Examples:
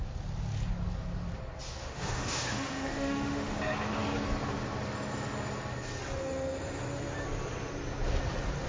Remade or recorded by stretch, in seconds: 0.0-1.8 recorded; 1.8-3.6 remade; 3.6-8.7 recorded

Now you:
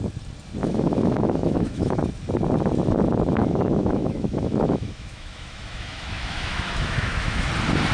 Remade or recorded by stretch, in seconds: 0.0-0.6 recorded; 0.6-2.0 remade; 2.0-3.4 recorded; 3.4-7.5 remade; 7.5-7.9 recorded

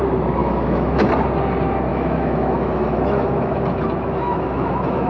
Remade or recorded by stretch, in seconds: 0.0-0.4 recorded; 0.4-1.1 remade; 1.1-1.9 recorded; 1.9-5.1 remade

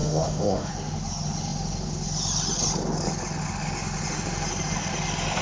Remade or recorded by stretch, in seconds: 0.0-0.7 remade; 0.7-5.4 recorded

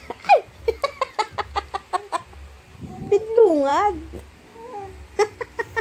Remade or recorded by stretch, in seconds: 0.0-5.8 recorded

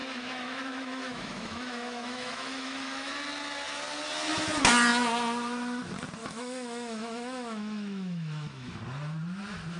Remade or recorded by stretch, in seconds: 0.0-3.1 remade; 3.1-6.2 recorded; 6.2-8.8 remade; 8.8-9.8 recorded

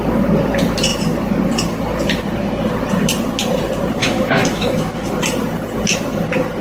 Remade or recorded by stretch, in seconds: 0.0-4.0 recorded; 4.0-5.1 remade; 5.1-6.6 recorded

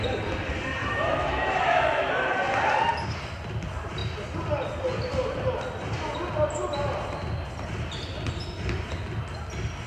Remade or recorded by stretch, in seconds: 0.0-0.8 recorded; 0.8-2.1 remade; 2.1-9.9 recorded